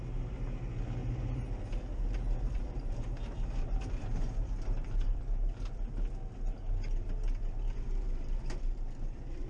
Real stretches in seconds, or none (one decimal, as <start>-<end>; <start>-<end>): 0.0-1.0; 5.2-9.5